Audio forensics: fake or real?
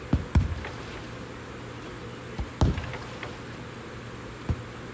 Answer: real